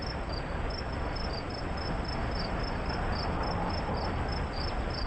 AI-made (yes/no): no